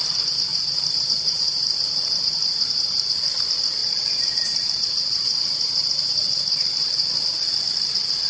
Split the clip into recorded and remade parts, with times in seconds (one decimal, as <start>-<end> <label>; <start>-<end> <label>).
0.0-0.5 recorded; 0.5-3.1 remade; 3.1-3.8 recorded; 3.8-6.1 remade; 6.1-8.3 recorded